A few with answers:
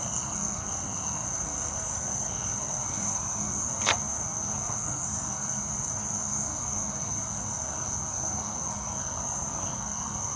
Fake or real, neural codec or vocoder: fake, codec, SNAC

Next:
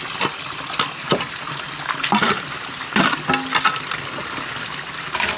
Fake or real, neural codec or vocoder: real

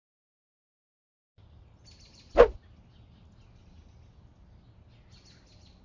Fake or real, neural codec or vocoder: real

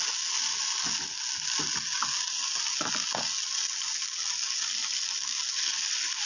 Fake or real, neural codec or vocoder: real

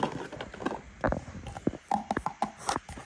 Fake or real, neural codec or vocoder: real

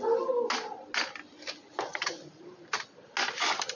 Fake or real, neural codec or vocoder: real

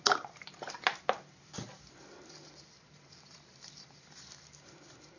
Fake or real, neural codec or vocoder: fake, vocoder, BigVGAN v2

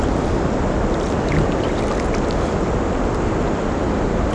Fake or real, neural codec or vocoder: real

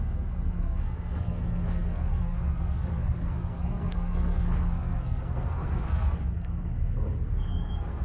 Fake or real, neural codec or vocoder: fake, codec, SNAC